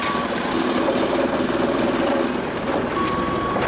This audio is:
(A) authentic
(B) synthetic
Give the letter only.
B